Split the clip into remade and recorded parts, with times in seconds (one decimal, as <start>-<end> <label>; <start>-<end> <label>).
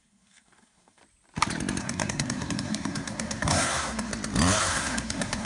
0.0-1.0 remade; 1.0-1.8 recorded; 1.8-4.1 remade; 4.1-4.6 recorded; 4.6-5.5 remade